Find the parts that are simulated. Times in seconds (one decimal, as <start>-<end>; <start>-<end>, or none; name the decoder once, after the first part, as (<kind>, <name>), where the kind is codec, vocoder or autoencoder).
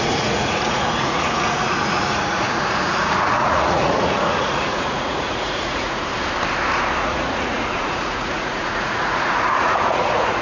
0.0-6.1 (vocoder, Vocos); 7.0-10.4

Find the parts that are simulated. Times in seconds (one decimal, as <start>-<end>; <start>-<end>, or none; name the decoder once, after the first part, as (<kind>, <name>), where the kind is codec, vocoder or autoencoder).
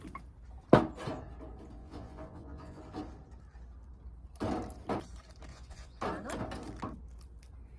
1.8-2.8 (vocoder, Vocos); 5.5-6.0